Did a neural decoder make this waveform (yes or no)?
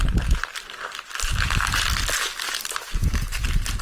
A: no